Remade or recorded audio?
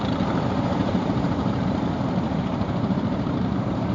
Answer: remade